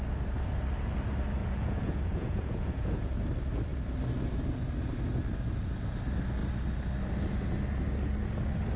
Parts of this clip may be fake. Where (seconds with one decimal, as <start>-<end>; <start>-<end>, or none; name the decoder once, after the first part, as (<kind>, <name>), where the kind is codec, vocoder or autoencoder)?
1.4-3.1 (vocoder, Vocos)